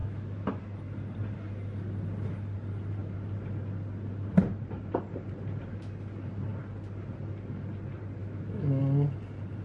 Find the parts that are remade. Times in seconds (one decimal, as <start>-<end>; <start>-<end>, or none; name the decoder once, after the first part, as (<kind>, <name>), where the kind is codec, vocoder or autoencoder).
0.0-0.6 (autoencoder, DAC-VAE); 8.2-8.8